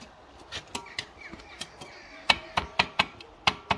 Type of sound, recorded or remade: recorded